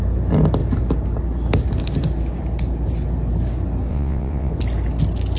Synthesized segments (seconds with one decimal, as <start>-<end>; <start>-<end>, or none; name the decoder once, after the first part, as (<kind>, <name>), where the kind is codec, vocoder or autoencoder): 3.9-4.5 (vocoder, WaveNeXt)